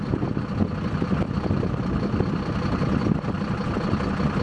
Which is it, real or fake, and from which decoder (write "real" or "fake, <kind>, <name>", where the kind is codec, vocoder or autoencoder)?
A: real